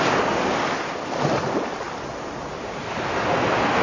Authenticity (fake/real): real